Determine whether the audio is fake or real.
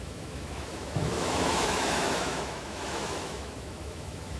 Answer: fake